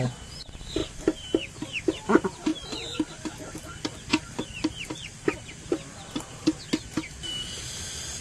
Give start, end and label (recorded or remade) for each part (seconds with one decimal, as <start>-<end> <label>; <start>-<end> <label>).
0.0-0.8 recorded; 0.8-2.0 remade; 2.0-2.5 recorded; 2.5-3.1 remade; 3.1-8.2 recorded

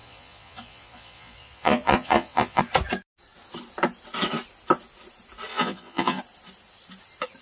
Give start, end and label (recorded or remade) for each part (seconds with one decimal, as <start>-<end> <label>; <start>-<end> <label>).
0.0-2.6 remade; 2.6-5.5 recorded; 5.5-6.2 remade; 6.2-7.4 recorded